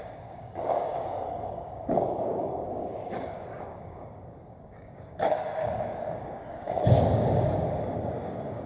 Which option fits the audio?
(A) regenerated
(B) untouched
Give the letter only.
A